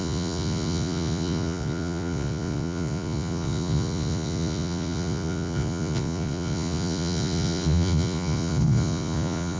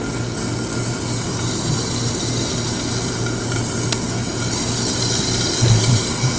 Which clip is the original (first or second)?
second